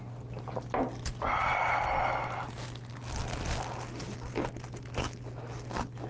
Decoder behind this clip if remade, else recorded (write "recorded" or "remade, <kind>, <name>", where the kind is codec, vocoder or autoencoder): recorded